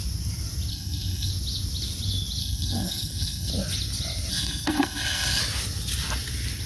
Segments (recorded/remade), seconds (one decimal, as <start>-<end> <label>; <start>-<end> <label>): 0.0-0.7 recorded; 0.7-1.3 remade; 1.3-2.4 recorded; 2.4-3.5 remade; 3.5-4.3 recorded; 4.3-5.4 remade; 5.4-6.7 recorded